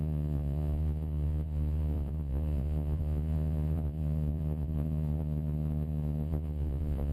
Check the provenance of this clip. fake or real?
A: fake